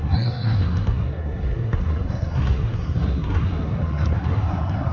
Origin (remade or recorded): remade